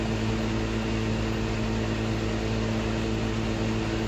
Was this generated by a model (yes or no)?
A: no